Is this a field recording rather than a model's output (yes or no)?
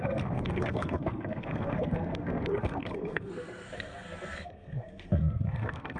no